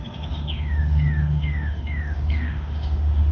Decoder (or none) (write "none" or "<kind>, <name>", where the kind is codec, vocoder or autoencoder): autoencoder, DAC-VAE